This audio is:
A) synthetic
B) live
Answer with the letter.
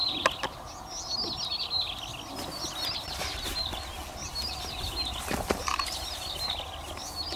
B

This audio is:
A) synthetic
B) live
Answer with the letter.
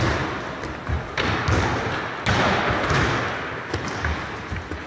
B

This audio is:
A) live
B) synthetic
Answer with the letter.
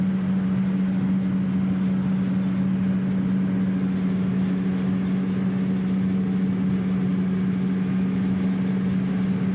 A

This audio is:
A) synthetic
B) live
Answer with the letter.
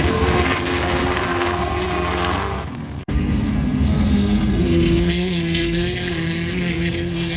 A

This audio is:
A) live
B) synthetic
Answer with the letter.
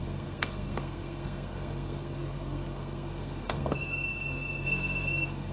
B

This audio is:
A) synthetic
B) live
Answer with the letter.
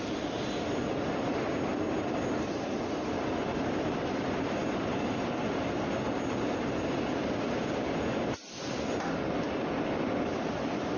B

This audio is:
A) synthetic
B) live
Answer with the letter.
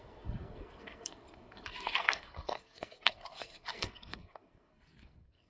A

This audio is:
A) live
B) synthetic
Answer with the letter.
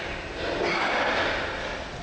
A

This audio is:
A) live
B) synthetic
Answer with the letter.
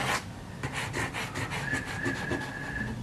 A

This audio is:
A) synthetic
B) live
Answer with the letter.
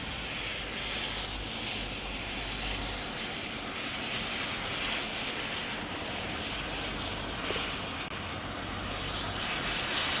B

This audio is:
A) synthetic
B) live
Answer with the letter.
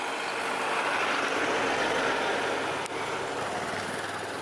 B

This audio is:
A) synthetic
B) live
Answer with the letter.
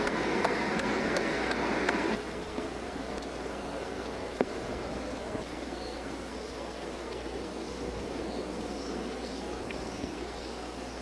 A